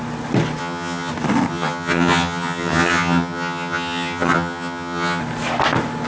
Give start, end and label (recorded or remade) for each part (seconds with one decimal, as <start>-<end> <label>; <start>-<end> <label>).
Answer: 0.0-0.6 recorded; 0.6-1.1 remade; 1.1-1.5 recorded; 1.5-5.2 remade; 5.2-6.1 recorded